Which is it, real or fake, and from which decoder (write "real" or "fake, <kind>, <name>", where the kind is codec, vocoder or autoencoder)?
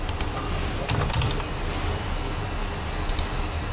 real